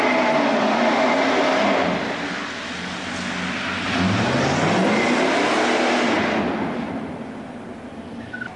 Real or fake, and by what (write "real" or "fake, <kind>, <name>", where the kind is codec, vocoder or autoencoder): real